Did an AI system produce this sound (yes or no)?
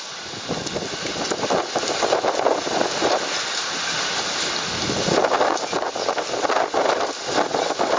no